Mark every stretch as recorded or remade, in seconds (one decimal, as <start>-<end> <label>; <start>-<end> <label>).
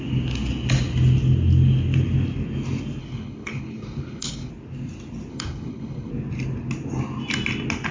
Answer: 0.0-3.0 recorded; 3.0-4.5 remade; 4.5-5.3 recorded; 5.3-6.1 remade; 6.1-7.9 recorded